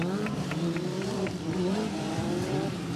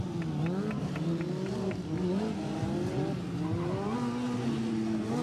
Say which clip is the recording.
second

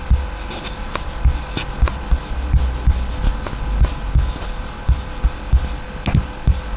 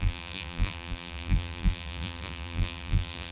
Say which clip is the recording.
first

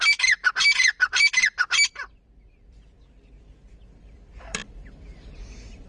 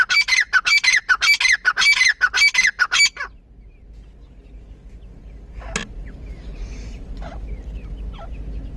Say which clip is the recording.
second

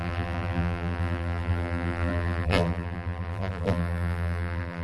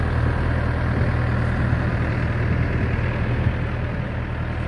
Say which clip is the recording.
second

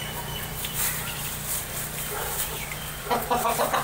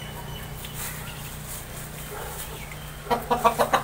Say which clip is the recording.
second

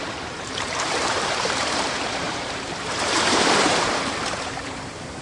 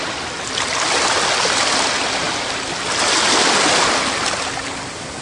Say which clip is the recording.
second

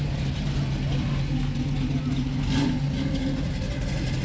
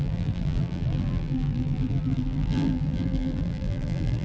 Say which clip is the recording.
first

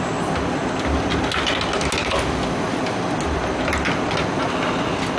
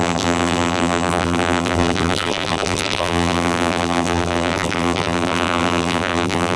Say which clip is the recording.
first